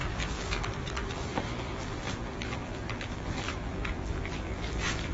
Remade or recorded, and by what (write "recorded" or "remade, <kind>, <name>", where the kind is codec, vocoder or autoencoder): remade, vocoder, BigVGAN v2